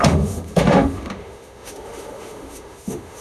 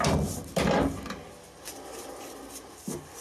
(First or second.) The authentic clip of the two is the second